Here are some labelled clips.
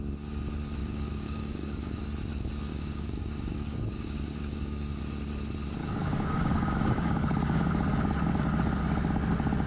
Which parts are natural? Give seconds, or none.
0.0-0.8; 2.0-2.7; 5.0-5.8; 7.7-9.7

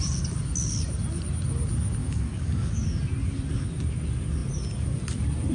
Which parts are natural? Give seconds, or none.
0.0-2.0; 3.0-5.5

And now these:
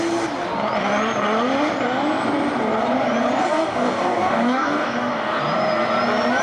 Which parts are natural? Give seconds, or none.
0.0-3.4; 5.4-6.4

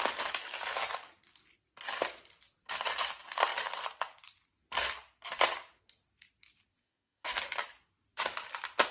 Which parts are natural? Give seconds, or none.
0.0-6.8; 7.4-8.9

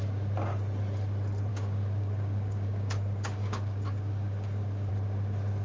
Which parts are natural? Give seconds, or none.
0.0-1.5; 4.9-5.6

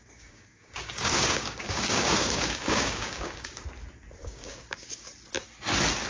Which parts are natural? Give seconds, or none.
3.6-4.2; 5.1-6.1

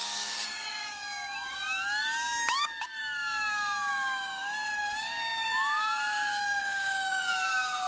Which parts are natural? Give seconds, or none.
none